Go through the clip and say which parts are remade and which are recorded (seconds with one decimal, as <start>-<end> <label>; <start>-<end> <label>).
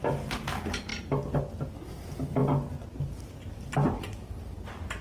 0.0-5.0 recorded